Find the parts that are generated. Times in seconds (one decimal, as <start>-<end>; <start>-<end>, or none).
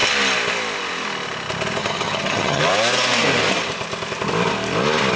1.8-2.6